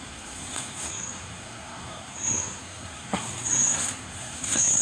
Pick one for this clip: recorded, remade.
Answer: remade